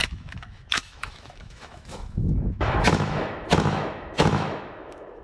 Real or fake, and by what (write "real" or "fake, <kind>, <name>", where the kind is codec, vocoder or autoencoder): fake, autoencoder, DAC-VAE